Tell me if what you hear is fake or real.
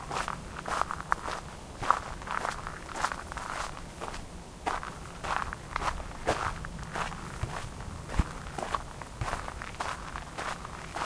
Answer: real